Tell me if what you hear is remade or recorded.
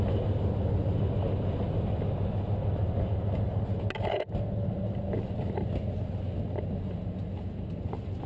recorded